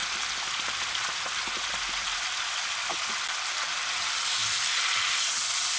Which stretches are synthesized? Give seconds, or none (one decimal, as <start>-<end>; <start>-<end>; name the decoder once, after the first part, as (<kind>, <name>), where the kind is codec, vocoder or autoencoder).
0.0-3.5 (vocoder, BigVGAN v2); 4.4-5.3